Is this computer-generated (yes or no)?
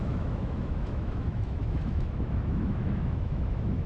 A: yes